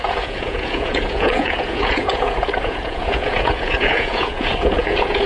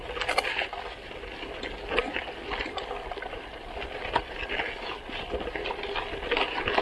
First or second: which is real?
second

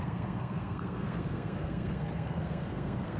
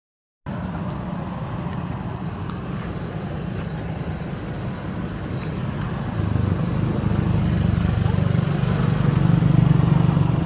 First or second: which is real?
second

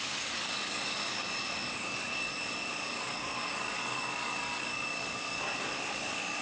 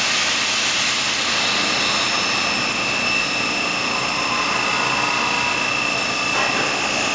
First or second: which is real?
second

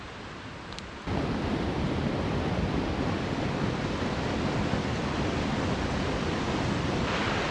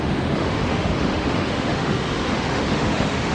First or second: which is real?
first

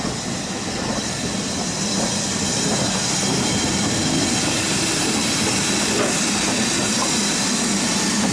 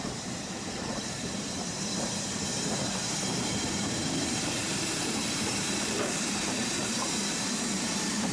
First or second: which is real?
first